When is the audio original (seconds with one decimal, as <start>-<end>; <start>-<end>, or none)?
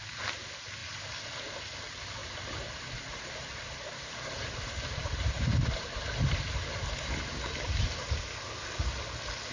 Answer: 0.0-2.2; 5.8-9.5